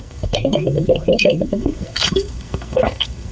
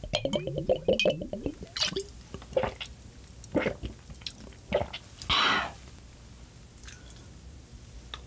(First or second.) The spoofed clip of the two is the first